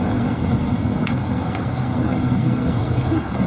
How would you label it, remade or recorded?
remade